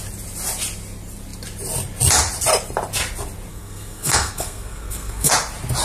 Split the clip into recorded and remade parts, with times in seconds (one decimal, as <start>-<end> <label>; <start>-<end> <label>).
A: 0.0-3.5 recorded; 3.5-5.3 remade; 5.3-5.8 recorded